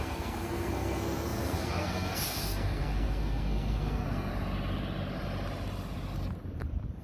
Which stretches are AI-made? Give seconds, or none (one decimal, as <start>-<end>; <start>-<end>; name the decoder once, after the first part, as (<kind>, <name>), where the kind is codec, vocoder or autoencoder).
0.0-4.3 (codec, SNAC)